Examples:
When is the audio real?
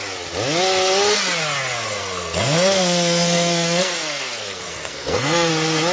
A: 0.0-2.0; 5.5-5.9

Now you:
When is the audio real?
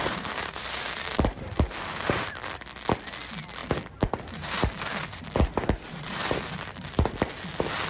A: 2.3-3.6; 7.1-7.9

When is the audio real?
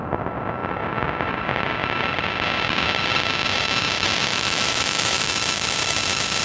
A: 0.0-4.3; 5.3-6.4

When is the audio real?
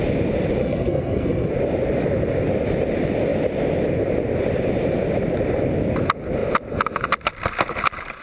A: 0.0-0.6; 1.5-8.2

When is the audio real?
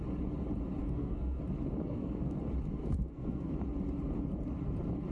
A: 0.0-0.8; 1.4-1.8; 2.3-2.8; 3.5-5.1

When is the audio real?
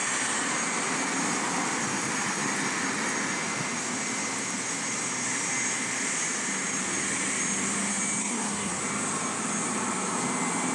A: 0.0-8.2; 8.8-10.7